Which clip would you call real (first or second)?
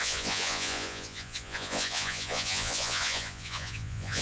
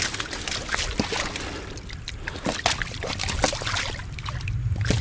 second